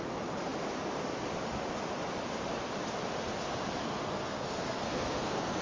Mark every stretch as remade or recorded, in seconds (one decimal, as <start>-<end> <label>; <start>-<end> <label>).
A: 0.0-3.8 recorded; 3.8-5.6 remade